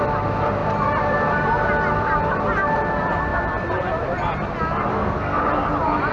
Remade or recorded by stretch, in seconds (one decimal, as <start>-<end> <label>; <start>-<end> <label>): 0.0-4.9 recorded; 4.9-5.4 remade; 5.4-6.1 recorded